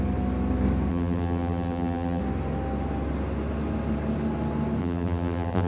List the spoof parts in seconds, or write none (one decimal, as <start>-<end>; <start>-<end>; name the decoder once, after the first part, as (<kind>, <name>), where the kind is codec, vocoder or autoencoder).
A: 0.9-2.2 (vocoder, BigVGAN v2); 4.8-5.7